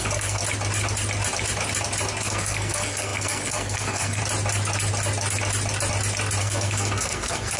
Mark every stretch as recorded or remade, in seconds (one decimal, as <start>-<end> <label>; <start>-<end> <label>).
0.0-0.4 remade; 0.4-2.2 recorded; 2.2-4.2 remade; 4.2-6.4 recorded; 6.4-7.6 remade

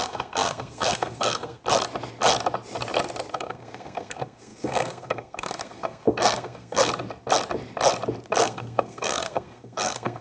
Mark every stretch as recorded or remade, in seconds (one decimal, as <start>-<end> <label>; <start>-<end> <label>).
0.0-1.6 remade; 1.6-3.3 recorded; 3.3-6.9 remade; 6.9-8.4 recorded; 8.4-10.2 remade

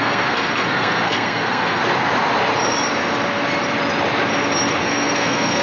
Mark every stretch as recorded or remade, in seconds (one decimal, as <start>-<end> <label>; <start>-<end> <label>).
0.0-1.8 remade; 1.8-4.8 recorded; 4.8-5.6 remade

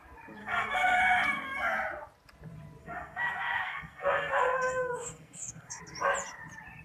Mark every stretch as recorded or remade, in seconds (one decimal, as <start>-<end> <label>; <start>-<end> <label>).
0.0-0.4 recorded; 0.4-1.0 remade; 1.0-2.8 recorded; 2.8-5.8 remade; 5.8-6.8 recorded

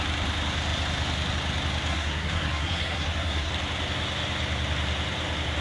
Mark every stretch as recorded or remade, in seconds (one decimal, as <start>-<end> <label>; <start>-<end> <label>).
0.0-1.9 recorded; 1.9-3.5 remade; 3.5-5.6 recorded